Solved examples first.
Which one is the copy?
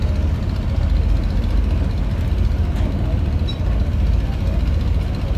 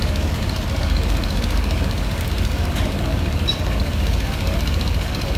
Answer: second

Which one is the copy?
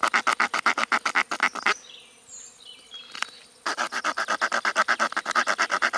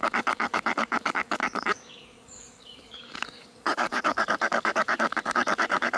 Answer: second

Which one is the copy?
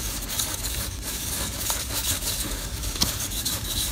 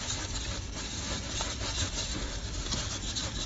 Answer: first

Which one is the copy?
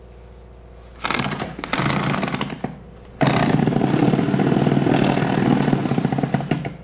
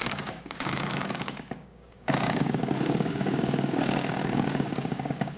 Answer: second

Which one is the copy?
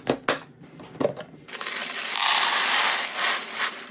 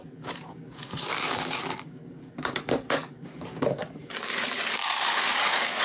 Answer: second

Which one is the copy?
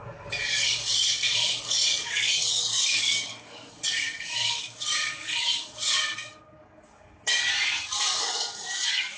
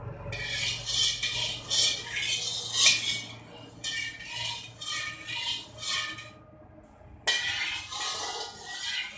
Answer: first